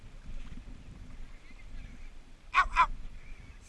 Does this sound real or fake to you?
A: real